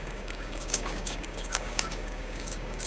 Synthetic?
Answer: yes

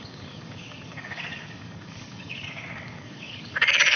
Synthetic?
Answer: yes